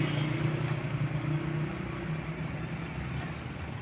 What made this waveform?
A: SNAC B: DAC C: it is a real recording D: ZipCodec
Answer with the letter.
C